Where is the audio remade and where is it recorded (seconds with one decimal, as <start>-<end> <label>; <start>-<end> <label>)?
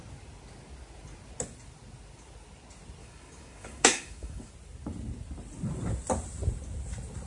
0.0-3.0 recorded; 3.0-4.5 remade; 4.5-7.3 recorded